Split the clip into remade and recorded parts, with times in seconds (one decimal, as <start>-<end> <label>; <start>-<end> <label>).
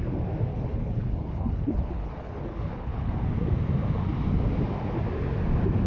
0.0-0.5 recorded; 0.5-3.1 remade; 3.1-5.9 recorded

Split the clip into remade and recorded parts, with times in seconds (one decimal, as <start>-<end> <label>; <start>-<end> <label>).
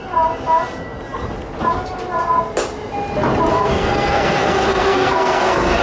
0.0-3.5 recorded; 3.5-5.8 remade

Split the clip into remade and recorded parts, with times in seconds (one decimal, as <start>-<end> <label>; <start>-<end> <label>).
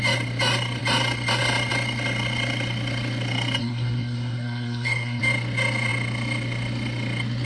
0.0-3.6 recorded; 3.6-5.2 remade; 5.2-7.4 recorded